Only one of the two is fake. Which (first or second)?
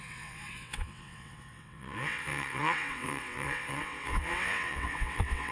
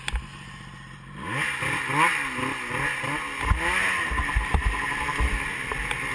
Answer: first